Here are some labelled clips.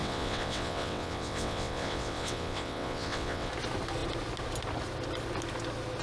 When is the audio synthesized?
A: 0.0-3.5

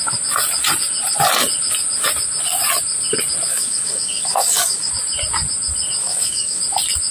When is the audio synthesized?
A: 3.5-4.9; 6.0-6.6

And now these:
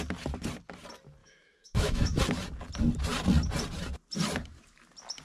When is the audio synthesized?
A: 1.2-2.2

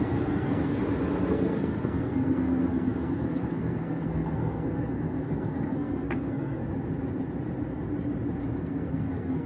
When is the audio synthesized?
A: 0.0-0.8; 1.3-6.6; 8.6-9.5

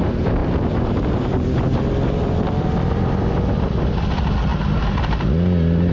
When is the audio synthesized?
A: 0.4-3.9

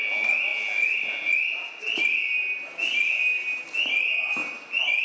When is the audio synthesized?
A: none

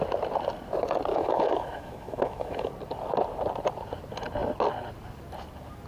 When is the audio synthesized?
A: 1.1-2.7